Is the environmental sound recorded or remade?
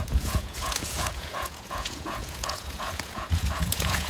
remade